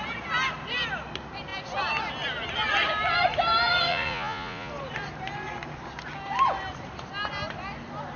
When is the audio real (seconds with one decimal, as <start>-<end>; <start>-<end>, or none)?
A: 0.0-3.9; 4.7-8.2